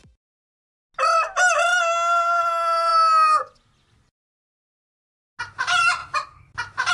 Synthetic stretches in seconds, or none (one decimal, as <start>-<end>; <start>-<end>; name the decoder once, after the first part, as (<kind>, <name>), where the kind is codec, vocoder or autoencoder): none